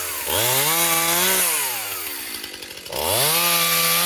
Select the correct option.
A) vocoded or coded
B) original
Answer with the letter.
B